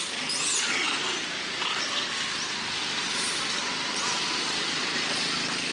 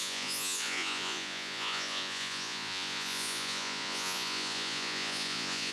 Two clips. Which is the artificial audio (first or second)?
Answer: second